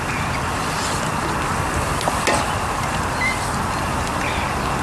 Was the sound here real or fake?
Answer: real